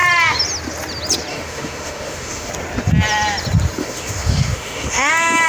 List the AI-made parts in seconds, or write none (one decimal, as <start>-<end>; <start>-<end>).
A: 1.3-2.5; 3.8-5.1